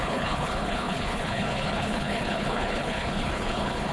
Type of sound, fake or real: fake